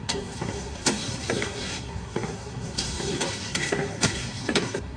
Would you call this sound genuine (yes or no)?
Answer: no